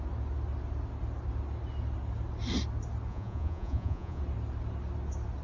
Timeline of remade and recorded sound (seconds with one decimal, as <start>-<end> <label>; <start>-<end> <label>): 0.0-3.1 recorded; 3.1-4.2 remade; 4.2-5.4 recorded